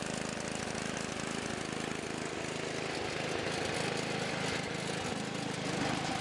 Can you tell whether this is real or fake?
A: real